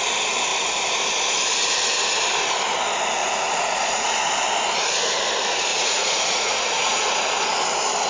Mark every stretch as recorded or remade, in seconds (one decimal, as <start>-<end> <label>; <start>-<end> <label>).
0.0-3.2 recorded; 3.2-4.3 remade; 4.3-5.7 recorded; 5.7-7.4 remade; 7.4-8.1 recorded